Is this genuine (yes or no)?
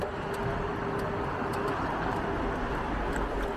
yes